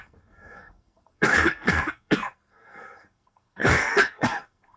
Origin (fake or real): fake